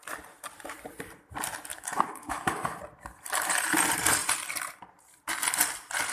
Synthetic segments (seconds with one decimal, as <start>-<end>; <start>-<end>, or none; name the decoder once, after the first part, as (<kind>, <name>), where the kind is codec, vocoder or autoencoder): 1.7-2.8 (autoencoder, DAC-VAE)